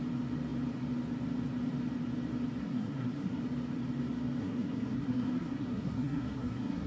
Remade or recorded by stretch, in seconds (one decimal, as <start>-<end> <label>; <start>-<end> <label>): 0.0-2.6 recorded; 2.6-3.4 remade; 3.4-4.4 recorded; 4.4-6.9 remade

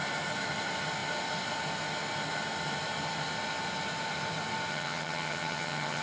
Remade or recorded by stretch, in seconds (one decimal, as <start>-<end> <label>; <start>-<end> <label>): 0.0-4.7 recorded; 4.7-6.0 remade

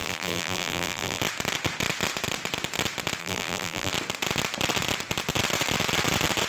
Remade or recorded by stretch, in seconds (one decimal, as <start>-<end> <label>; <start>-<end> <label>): 0.0-1.2 remade; 1.2-3.2 recorded; 3.2-3.9 remade; 3.9-6.5 recorded

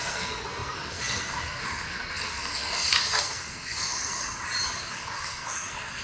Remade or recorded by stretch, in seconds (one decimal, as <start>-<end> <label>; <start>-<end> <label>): 0.0-4.2 remade; 4.2-4.9 recorded; 4.9-6.0 remade